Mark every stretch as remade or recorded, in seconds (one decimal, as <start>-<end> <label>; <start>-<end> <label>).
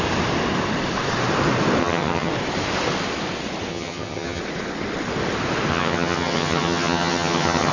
0.0-1.8 recorded; 1.8-2.3 remade; 2.3-3.7 recorded; 3.7-4.4 remade; 4.4-5.7 recorded; 5.7-7.7 remade